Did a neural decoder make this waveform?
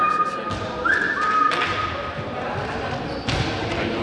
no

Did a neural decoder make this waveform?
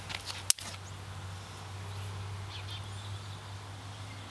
no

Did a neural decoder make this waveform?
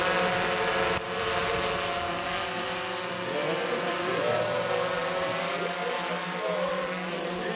no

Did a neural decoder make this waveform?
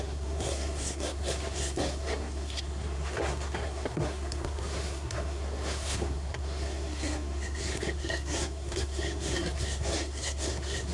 yes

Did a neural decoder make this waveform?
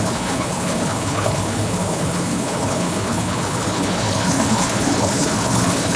yes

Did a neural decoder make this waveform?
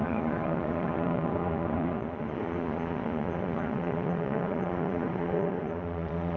yes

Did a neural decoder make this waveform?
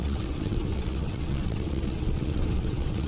yes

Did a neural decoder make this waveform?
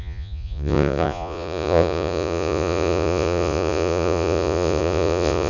yes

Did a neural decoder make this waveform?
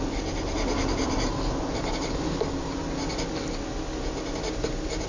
no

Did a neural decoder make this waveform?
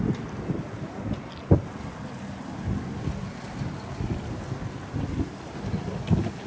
no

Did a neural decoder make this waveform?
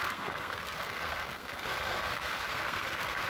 yes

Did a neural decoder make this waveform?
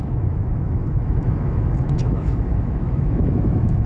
yes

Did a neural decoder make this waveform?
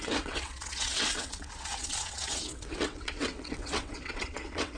yes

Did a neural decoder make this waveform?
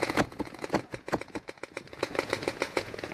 yes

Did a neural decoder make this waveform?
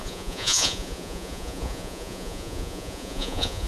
yes